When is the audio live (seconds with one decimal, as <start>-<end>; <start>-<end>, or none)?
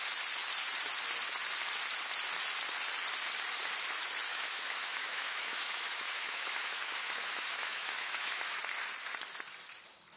0.0-4.3; 8.6-10.2